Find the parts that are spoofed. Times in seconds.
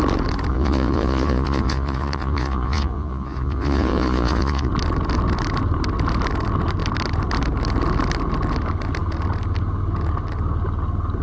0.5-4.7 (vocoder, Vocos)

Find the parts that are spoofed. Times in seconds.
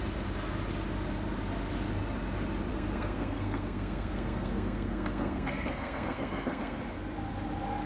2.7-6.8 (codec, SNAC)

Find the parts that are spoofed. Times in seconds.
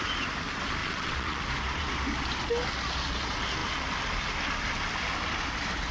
0.8-1.4 (vocoder, Vocos)